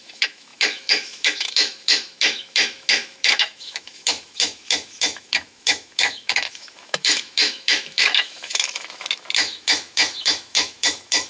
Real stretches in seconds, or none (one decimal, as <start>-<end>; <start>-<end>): none